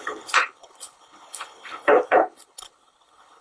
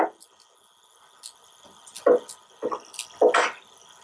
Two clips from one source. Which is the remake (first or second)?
first